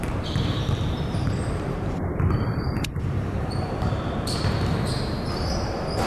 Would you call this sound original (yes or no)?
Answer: no